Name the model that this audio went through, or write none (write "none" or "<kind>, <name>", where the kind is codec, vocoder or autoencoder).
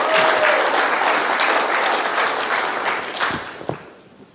none